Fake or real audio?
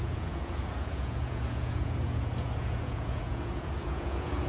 fake